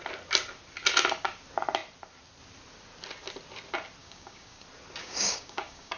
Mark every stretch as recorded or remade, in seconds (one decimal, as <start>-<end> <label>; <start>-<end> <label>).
0.0-4.0 recorded; 4.0-4.6 remade; 4.6-5.0 recorded; 5.0-6.0 remade